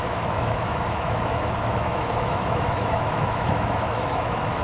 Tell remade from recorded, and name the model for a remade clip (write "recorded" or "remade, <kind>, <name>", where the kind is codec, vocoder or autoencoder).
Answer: remade, autoencoder, DAC-VAE